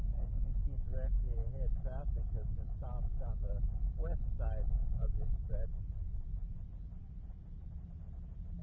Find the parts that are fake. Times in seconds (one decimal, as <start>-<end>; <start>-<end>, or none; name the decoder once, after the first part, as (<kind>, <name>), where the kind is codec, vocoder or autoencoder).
2.4-4.3 (vocoder, BigVGAN v2); 4.8-5.5